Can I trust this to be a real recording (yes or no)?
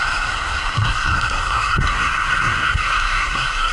no